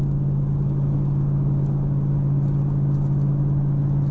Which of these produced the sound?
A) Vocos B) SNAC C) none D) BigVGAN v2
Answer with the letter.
C